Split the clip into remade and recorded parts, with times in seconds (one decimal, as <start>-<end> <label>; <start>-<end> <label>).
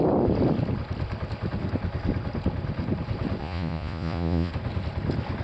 0.0-3.4 recorded; 3.4-4.5 remade; 4.5-5.4 recorded